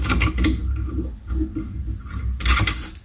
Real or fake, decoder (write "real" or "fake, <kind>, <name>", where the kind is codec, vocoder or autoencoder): real